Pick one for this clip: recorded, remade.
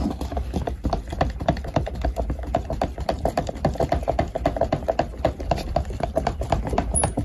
recorded